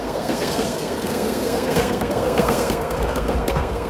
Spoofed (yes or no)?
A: yes